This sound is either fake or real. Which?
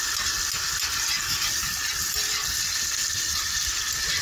real